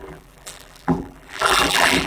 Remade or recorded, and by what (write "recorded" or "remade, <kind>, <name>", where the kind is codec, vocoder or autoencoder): remade, vocoder, BigVGAN v2